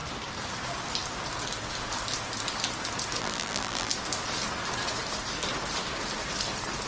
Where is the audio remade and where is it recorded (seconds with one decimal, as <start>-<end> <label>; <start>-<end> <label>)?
0.0-3.2 recorded; 3.2-3.9 remade; 3.9-6.9 recorded